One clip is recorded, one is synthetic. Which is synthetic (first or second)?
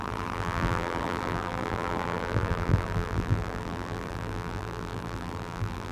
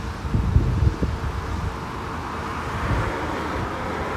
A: first